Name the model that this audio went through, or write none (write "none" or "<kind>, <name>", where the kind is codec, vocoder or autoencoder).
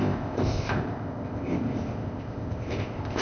codec, ZipCodec